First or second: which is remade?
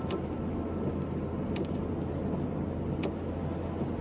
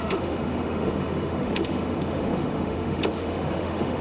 second